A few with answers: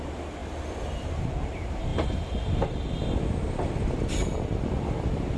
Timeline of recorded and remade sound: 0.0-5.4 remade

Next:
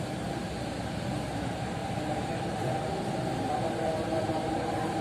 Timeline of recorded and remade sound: 0.0-0.4 remade; 0.4-1.3 recorded; 1.3-1.8 remade; 1.8-3.5 recorded; 3.5-5.0 remade

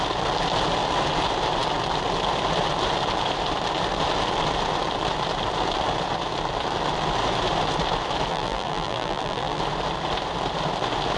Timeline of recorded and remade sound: 0.0-8.3 recorded; 8.3-9.6 remade; 9.6-11.2 recorded

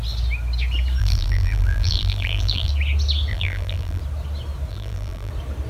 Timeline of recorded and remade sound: 0.0-1.0 recorded; 1.0-2.7 remade; 2.7-3.3 recorded; 3.3-4.0 remade; 4.0-4.7 recorded; 4.7-5.3 remade; 5.3-5.7 recorded

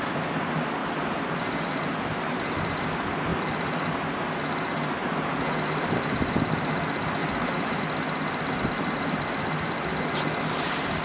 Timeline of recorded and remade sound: 0.0-0.8 recorded; 0.8-1.3 remade; 1.3-5.0 recorded; 5.0-6.3 remade; 6.3-7.2 recorded; 7.2-7.8 remade; 7.8-11.0 recorded

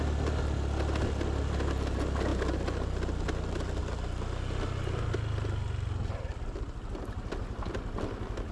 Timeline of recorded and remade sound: 0.0-8.5 recorded

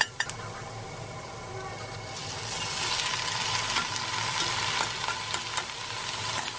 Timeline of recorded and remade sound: 0.0-6.6 recorded